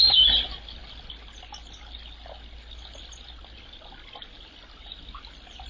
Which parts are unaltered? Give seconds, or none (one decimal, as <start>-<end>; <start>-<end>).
0.0-5.7